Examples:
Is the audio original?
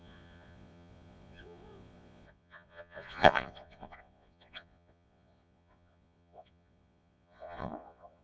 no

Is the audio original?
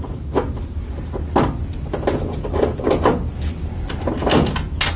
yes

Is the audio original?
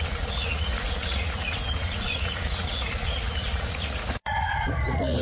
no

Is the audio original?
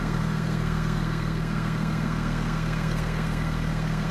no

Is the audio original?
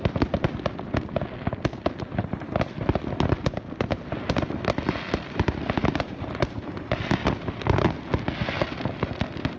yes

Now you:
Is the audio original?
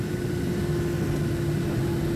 yes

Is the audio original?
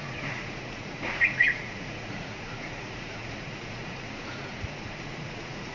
no